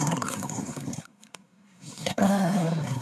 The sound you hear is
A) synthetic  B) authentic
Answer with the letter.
A